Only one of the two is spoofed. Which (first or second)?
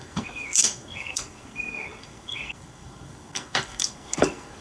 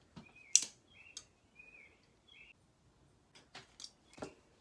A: first